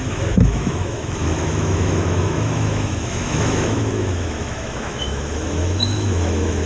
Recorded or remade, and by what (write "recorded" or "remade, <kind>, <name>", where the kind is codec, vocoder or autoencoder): remade, autoencoder, DAC-VAE